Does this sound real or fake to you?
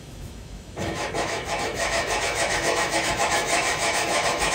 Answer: fake